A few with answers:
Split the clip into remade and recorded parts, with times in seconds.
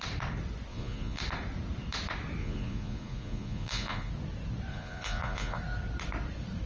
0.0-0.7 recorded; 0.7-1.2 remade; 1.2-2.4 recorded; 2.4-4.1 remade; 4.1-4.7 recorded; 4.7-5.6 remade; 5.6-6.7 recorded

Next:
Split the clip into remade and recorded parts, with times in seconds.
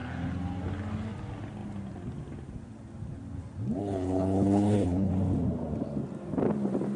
0.0-3.8 recorded; 3.8-5.1 remade; 5.1-7.0 recorded